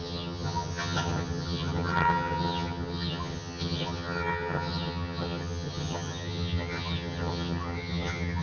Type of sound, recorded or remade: remade